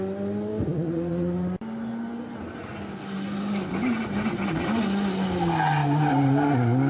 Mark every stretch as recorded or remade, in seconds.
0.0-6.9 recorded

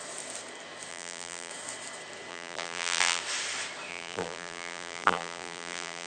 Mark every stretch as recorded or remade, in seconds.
0.0-0.9 recorded; 0.9-1.5 remade; 1.5-2.3 recorded; 2.3-3.2 remade; 3.2-3.9 recorded; 3.9-6.1 remade

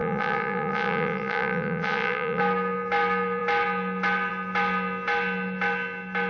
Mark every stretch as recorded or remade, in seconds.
0.0-2.4 remade; 2.4-6.3 recorded

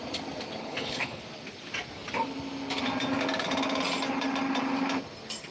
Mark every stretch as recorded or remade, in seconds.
0.0-0.6 recorded; 0.6-1.2 remade; 1.2-5.5 recorded

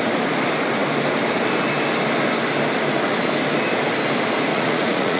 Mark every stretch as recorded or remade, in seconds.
0.0-4.5 recorded; 4.5-5.2 remade

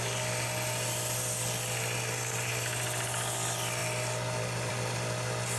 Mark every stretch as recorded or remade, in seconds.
0.0-5.6 recorded